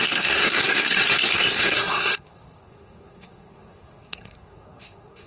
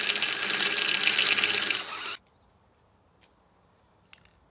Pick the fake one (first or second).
first